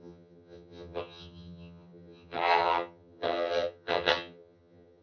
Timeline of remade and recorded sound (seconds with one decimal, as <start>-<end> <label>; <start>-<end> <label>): 0.0-5.0 remade